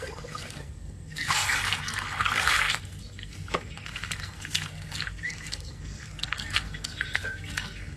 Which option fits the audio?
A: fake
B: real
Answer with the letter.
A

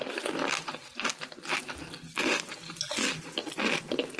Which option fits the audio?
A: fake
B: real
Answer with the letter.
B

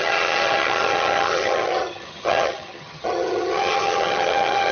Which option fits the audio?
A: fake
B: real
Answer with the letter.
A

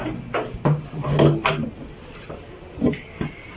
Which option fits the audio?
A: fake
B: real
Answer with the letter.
B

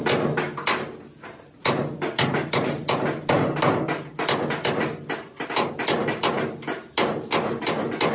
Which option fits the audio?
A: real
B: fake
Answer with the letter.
A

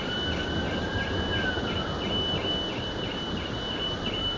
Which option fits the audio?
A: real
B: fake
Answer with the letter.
A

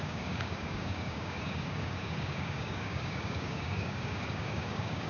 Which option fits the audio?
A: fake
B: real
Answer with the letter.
A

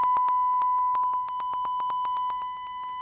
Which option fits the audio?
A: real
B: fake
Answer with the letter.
A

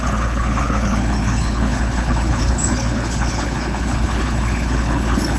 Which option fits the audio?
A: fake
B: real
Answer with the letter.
A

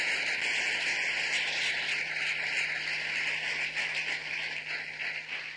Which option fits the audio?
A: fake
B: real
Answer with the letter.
B